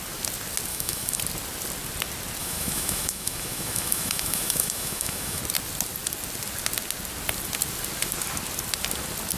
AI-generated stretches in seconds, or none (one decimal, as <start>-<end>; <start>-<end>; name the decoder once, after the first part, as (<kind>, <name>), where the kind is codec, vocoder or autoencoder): 0.7-1.2 (autoencoder, DAC-VAE); 2.4-5.4